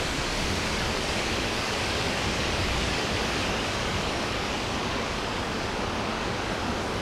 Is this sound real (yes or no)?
no